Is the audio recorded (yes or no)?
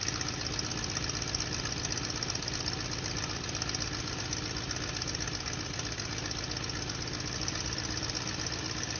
yes